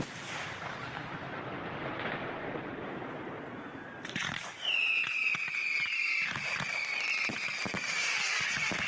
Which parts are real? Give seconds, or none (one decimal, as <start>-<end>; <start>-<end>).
none